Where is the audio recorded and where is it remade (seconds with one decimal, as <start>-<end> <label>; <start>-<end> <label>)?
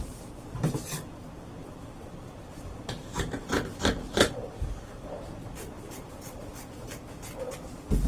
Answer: 0.0-1.6 recorded; 1.6-6.5 remade; 6.5-8.1 recorded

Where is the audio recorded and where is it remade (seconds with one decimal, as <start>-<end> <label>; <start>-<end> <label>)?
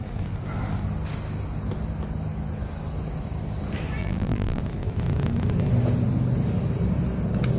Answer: 0.0-4.0 recorded; 4.0-4.6 remade; 4.6-7.6 recorded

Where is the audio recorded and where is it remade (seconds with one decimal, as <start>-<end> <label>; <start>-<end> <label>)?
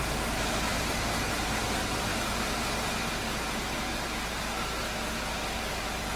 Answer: 0.0-2.1 remade; 2.1-5.8 recorded; 5.8-6.2 remade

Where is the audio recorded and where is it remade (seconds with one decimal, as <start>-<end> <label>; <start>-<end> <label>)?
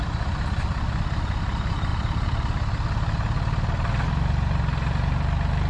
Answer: 0.0-5.7 recorded